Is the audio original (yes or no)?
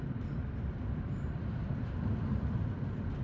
no